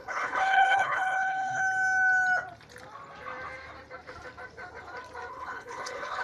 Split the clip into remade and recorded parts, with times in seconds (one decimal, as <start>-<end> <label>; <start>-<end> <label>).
0.0-1.6 remade; 1.6-5.3 recorded; 5.3-6.2 remade